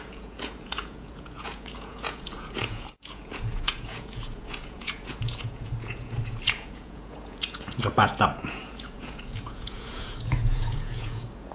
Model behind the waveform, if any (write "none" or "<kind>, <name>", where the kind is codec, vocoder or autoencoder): vocoder, Vocos